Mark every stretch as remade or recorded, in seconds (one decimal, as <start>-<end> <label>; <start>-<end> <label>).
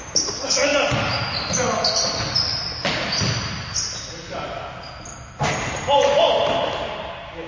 0.0-7.5 recorded